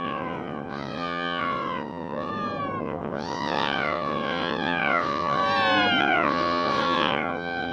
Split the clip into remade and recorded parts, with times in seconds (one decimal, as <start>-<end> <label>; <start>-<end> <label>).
0.0-2.3 remade; 2.3-2.8 recorded; 2.8-5.4 remade; 5.4-6.0 recorded; 6.0-7.7 remade